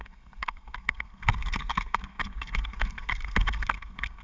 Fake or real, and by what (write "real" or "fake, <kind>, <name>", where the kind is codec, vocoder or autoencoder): fake, codec, SNAC